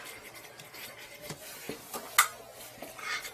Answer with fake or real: real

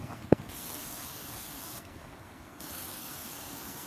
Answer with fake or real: fake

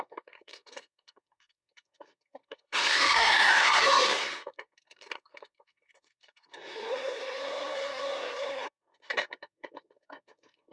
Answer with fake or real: fake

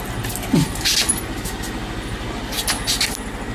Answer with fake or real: real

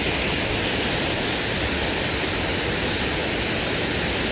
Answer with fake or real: real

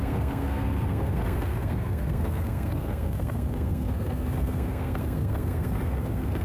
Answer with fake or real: fake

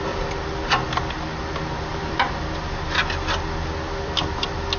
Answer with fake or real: real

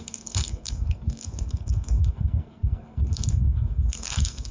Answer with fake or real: fake